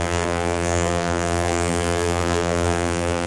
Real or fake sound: fake